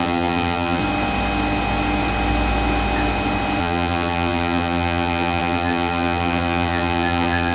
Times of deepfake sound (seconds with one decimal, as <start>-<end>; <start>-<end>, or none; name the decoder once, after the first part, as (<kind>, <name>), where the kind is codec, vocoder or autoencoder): 0.0-0.8 (vocoder, BigVGAN v2); 3.6-7.5